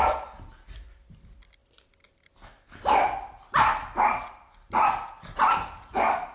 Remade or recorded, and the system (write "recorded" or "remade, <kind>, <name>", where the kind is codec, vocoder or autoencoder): recorded